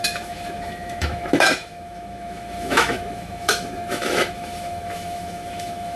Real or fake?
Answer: fake